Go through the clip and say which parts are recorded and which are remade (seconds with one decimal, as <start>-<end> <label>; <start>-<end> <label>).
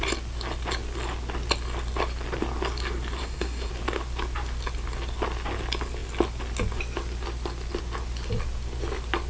0.0-3.2 recorded; 3.2-3.7 remade; 3.7-9.3 recorded